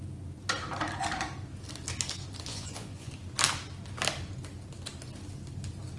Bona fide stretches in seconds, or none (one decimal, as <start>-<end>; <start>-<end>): 0.0-2.5; 3.1-6.0